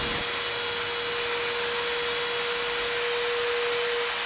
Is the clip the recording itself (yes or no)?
yes